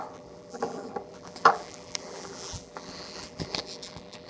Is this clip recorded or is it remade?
remade